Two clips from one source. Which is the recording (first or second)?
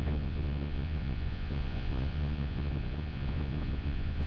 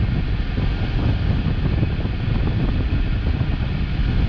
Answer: second